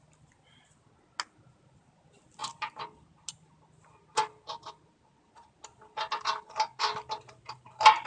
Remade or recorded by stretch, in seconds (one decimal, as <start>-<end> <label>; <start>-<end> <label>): 0.0-8.1 recorded